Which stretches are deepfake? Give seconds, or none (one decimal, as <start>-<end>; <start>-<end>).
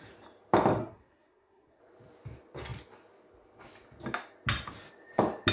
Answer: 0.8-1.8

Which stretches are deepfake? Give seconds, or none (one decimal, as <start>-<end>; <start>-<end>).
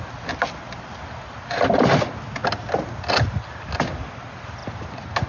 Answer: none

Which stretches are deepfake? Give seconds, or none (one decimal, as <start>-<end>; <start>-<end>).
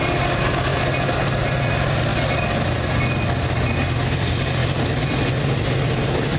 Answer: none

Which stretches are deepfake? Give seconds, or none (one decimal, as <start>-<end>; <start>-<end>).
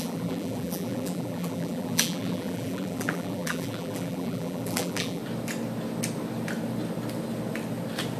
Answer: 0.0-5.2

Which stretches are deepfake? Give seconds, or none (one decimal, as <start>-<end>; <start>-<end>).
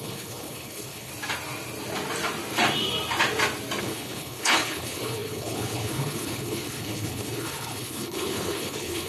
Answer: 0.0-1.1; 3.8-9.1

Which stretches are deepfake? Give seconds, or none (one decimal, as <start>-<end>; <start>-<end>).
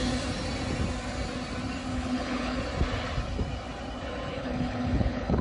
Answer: 1.9-2.6; 4.3-5.4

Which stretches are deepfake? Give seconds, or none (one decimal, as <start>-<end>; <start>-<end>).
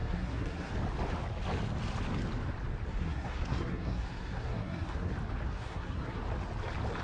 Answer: 0.0-0.7; 2.9-5.1; 5.5-6.2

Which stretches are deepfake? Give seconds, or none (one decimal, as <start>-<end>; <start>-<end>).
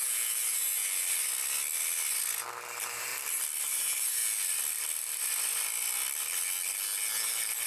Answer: 0.0-0.8; 2.4-4.2; 5.3-7.7